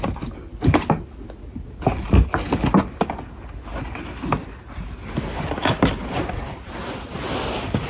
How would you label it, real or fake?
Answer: real